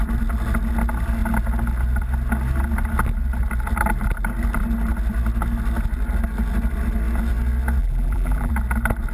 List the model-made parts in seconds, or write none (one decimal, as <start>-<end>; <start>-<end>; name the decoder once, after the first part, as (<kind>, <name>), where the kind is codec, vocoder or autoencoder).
7.8-8.5 (vocoder, BigVGAN v2)